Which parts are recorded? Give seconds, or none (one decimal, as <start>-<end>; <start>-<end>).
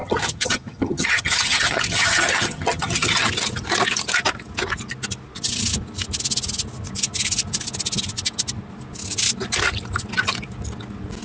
3.3-11.2